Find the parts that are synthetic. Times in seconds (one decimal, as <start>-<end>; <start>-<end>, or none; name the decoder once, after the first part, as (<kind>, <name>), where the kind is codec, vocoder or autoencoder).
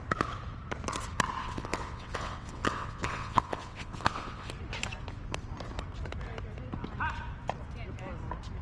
1.4-4.5 (vocoder, WaveNeXt)